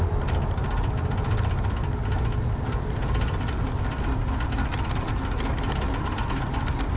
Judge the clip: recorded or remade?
recorded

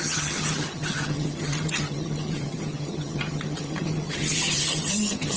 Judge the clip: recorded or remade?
remade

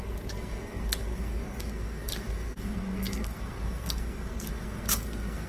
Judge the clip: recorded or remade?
remade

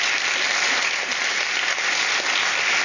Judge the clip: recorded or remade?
recorded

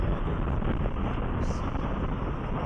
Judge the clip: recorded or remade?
recorded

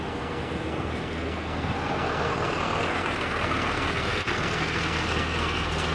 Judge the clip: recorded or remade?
remade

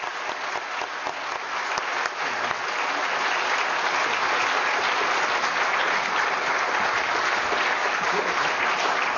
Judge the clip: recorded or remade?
recorded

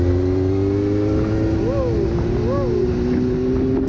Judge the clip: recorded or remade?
recorded